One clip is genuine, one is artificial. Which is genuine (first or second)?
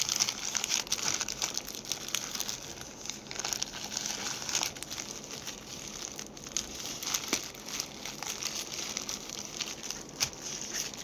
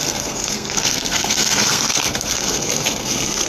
first